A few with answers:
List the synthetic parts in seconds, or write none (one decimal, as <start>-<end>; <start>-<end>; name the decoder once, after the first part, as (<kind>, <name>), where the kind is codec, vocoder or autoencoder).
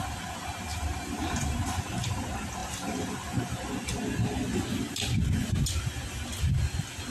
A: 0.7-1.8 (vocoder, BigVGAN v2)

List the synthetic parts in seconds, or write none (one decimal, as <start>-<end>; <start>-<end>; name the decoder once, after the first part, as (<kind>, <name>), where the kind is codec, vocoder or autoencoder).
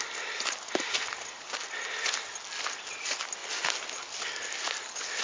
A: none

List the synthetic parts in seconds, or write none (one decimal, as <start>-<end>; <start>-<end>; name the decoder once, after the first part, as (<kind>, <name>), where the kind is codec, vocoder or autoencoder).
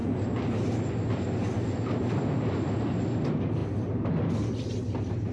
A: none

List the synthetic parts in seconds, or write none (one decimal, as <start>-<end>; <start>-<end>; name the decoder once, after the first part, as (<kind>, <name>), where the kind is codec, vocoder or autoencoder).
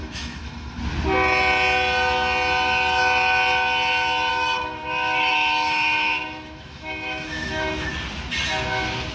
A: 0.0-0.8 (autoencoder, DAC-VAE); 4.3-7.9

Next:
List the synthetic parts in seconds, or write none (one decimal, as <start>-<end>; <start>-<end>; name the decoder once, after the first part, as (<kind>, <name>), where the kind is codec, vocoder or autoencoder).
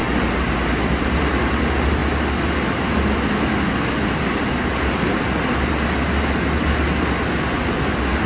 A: none